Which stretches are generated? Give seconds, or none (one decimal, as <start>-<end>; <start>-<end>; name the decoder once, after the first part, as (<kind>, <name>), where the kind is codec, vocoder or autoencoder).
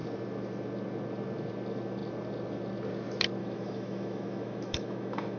3.4-5.4 (autoencoder, DAC-VAE)